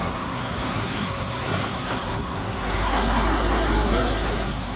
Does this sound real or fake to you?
fake